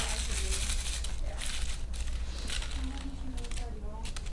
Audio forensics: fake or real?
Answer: real